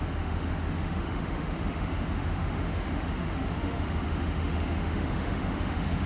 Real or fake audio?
fake